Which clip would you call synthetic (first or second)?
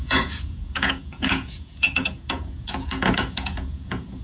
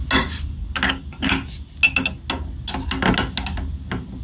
first